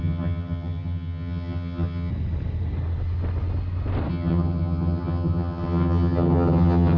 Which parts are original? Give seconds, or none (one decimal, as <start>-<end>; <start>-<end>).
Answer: 2.1-4.1